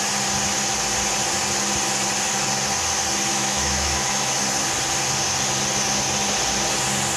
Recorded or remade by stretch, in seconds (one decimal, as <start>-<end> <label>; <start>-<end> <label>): 0.0-3.3 recorded; 3.3-4.4 remade; 4.4-7.2 recorded